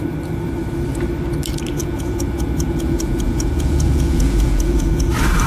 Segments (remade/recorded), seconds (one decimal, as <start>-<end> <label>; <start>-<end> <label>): 0.0-1.8 recorded; 1.8-5.1 remade; 5.1-5.5 recorded